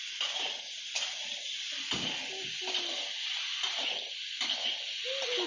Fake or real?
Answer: real